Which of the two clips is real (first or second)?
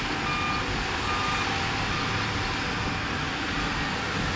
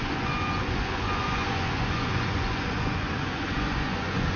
first